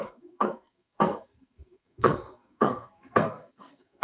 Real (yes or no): no